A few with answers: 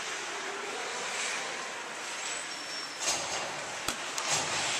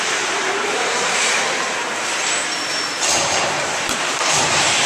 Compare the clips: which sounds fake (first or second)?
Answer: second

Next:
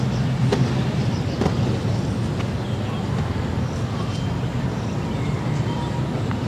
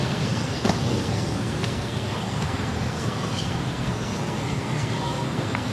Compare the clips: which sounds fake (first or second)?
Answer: second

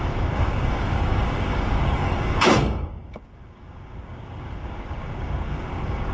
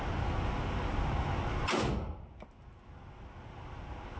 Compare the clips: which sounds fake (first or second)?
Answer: first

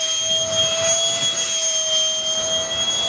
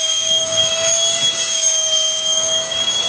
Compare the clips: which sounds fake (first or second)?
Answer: second